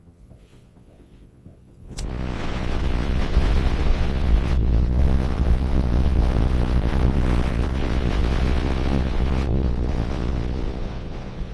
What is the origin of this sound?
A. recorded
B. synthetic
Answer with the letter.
B